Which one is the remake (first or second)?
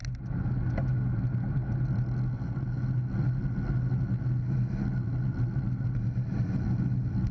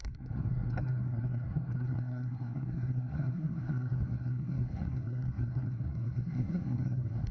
second